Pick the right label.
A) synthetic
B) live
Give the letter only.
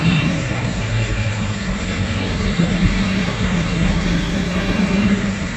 A